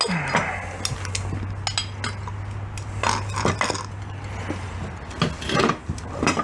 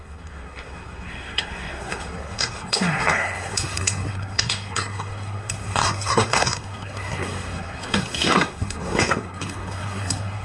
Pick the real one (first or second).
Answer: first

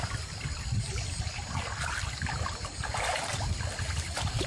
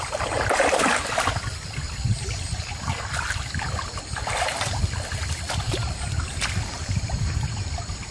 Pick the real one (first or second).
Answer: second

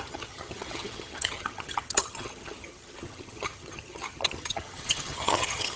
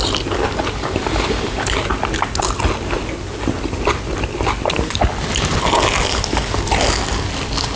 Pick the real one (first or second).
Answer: second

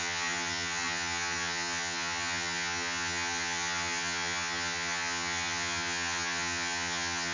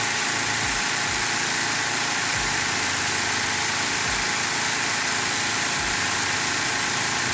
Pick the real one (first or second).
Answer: second